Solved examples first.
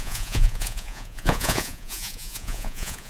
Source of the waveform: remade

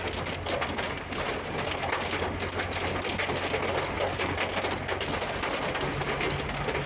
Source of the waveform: recorded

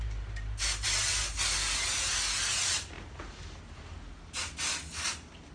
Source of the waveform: recorded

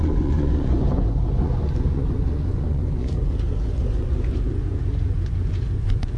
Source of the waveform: remade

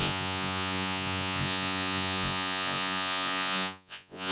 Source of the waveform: remade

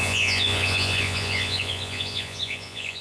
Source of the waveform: remade